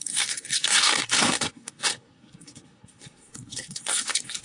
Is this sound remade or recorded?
remade